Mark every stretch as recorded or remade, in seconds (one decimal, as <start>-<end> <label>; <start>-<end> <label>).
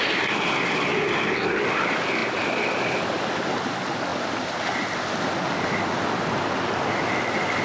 0.0-7.6 recorded